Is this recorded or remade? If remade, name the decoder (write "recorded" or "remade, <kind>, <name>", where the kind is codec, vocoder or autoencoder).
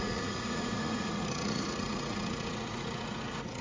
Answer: remade, vocoder, Vocos